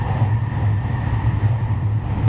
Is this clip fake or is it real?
fake